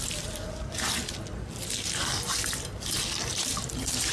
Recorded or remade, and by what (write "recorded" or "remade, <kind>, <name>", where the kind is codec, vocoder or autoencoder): remade, vocoder, BigVGAN v2